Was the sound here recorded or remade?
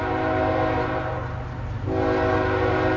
recorded